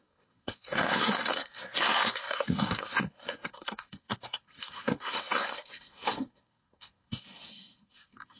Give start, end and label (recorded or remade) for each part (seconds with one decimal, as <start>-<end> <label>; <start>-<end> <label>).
0.0-8.4 remade